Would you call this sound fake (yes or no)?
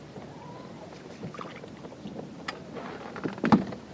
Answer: no